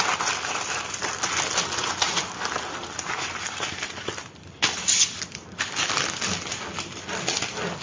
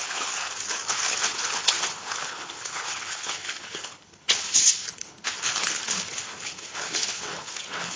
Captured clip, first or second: first